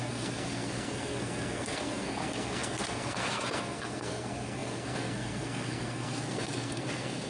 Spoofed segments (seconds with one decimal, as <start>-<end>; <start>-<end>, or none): 0.0-7.3